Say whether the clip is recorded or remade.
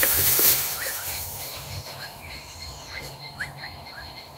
remade